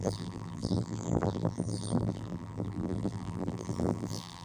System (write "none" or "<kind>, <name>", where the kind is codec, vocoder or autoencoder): vocoder, BigVGAN v2